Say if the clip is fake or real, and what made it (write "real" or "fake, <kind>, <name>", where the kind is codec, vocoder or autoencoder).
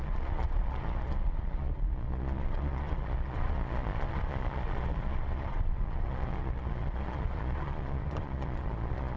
fake, vocoder, Vocos